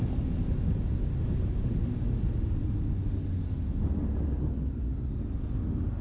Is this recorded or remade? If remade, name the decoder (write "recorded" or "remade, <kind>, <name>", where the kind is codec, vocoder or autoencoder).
recorded